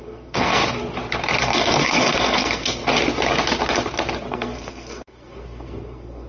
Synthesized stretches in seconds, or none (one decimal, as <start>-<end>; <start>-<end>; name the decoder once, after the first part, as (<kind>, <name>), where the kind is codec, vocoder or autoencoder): 0.0-0.6 (codec, SNAC); 1.4-2.8; 4.3-6.3